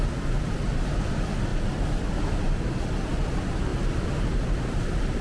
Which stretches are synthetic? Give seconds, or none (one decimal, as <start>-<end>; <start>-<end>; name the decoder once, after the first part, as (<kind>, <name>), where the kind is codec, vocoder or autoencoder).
1.5-2.0 (vocoder, BigVGAN v2)